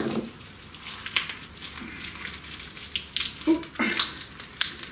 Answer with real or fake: real